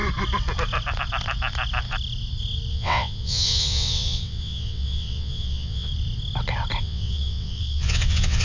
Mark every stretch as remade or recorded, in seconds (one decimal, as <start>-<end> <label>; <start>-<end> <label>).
0.0-2.7 recorded; 2.7-5.9 remade; 5.9-6.8 recorded; 6.8-8.4 remade

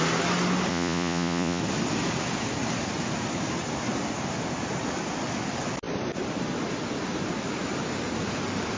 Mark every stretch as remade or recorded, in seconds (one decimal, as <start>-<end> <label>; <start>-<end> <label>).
0.0-0.7 recorded; 0.7-1.6 remade; 1.6-8.8 recorded

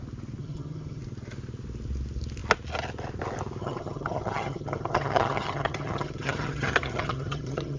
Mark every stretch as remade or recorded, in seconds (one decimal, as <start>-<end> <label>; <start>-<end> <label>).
0.0-0.4 recorded; 0.4-1.0 remade; 1.0-3.6 recorded; 3.6-7.8 remade

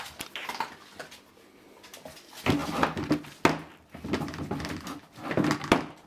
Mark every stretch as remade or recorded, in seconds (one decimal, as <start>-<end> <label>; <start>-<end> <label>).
0.0-6.1 recorded

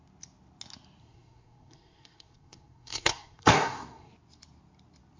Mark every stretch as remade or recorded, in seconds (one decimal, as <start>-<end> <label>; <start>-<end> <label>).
0.0-1.0 recorded; 1.0-4.1 remade; 4.1-5.2 recorded

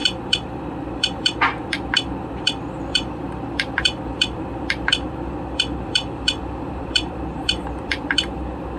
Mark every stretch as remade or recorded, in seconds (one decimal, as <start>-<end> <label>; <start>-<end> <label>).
0.0-8.8 remade

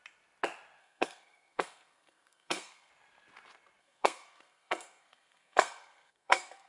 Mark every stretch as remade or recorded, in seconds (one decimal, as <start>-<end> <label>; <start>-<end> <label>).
0.0-0.8 recorded; 0.8-2.9 remade; 2.9-3.8 recorded; 3.8-6.7 remade